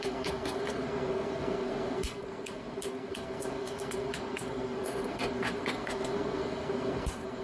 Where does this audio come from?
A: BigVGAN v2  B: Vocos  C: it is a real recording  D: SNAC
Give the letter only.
D